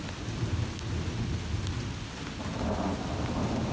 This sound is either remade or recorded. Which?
recorded